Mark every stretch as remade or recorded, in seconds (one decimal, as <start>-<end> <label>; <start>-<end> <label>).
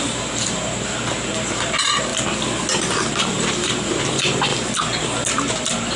0.0-2.1 remade; 2.1-3.2 recorded; 3.2-4.5 remade; 4.5-5.5 recorded; 5.5-6.0 remade